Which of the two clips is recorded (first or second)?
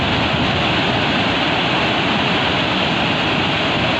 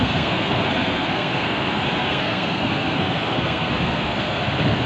first